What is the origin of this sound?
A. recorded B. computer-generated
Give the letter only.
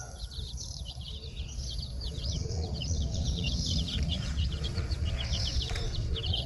B